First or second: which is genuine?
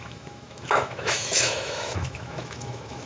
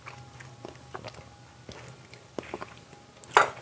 second